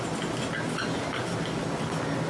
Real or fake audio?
real